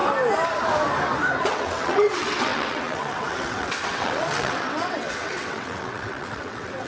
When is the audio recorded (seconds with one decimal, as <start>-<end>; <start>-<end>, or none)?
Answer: 0.0-1.4